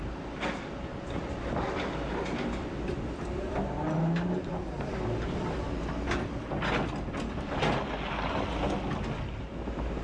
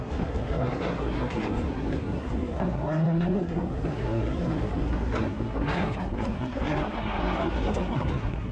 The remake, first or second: second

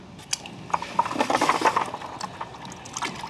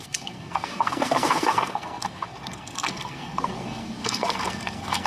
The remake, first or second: second